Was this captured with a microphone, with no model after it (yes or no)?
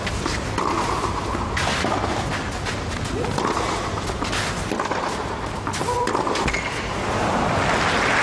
yes